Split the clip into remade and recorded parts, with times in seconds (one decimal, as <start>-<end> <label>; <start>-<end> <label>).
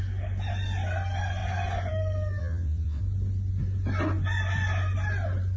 0.0-2.4 recorded; 2.4-3.0 remade; 3.0-5.6 recorded